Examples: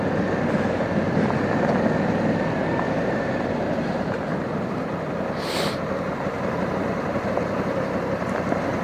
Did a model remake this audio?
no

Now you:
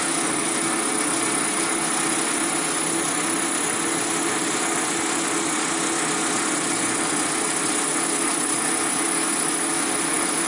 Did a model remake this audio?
no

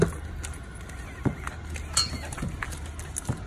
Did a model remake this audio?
no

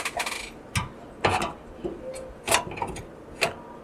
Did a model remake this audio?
no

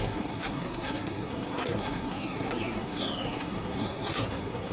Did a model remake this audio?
yes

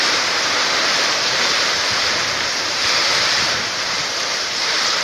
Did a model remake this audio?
yes